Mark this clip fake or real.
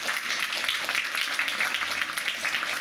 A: real